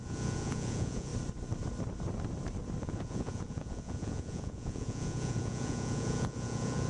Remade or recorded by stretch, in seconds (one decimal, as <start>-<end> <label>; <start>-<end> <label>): 0.0-1.1 remade; 1.1-2.8 recorded; 2.8-6.9 remade